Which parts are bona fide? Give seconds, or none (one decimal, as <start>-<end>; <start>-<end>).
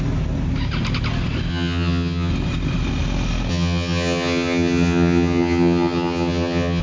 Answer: 0.0-1.5; 2.3-3.5